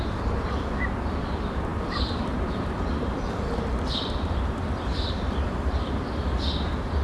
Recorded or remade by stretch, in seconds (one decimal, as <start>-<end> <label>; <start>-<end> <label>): 0.0-7.0 remade